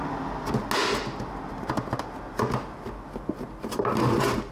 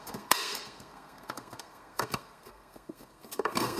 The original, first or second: first